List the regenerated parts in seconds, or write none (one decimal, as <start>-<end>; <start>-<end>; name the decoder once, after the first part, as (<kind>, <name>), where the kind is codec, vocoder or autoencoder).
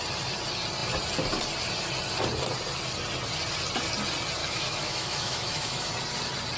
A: 4.4-5.9 (autoencoder, DAC-VAE)